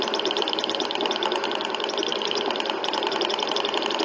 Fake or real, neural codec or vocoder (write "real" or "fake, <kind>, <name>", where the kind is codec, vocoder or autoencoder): fake, vocoder, BigVGAN v2